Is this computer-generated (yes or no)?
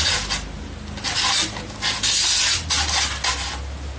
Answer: no